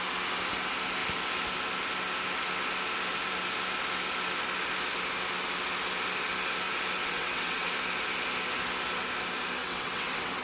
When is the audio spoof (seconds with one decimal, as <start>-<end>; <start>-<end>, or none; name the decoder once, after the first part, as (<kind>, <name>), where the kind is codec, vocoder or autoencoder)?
7.0-7.7 (vocoder, WaveNeXt); 9.6-10.4